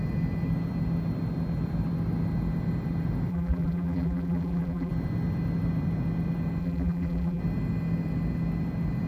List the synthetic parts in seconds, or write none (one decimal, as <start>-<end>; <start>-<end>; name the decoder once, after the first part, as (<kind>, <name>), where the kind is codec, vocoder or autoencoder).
3.3-4.9 (vocoder, BigVGAN v2); 6.6-7.4